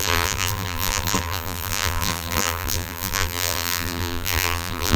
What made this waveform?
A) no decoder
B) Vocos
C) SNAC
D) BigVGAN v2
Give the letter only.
D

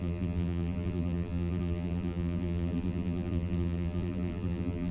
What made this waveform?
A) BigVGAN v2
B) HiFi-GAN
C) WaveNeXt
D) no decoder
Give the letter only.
A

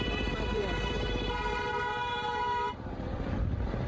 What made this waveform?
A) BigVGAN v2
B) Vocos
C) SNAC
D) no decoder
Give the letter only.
A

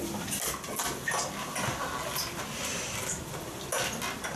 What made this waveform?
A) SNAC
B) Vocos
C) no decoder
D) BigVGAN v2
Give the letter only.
C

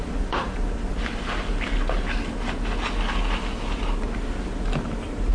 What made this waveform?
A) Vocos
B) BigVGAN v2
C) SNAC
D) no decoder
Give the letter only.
D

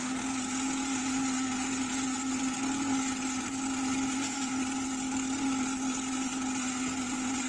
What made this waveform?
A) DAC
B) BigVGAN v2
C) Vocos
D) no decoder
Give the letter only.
D